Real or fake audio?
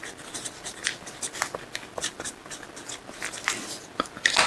real